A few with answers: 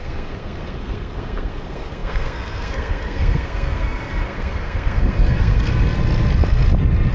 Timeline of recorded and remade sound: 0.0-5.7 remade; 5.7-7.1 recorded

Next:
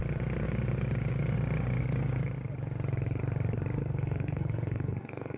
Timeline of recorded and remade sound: 0.0-3.8 recorded; 3.8-5.4 remade

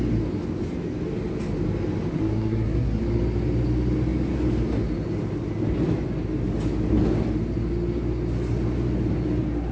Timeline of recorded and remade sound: 0.0-2.1 recorded; 2.1-3.0 remade; 3.0-9.7 recorded

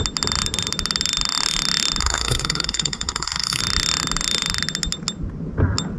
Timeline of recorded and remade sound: 0.0-2.0 recorded; 2.0-3.6 remade; 3.6-6.0 recorded

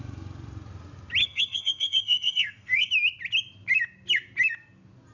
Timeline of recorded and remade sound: 0.0-1.2 recorded; 1.2-2.9 remade; 2.9-5.1 recorded